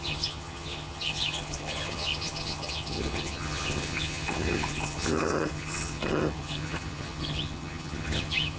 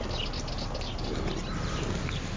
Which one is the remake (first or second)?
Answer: first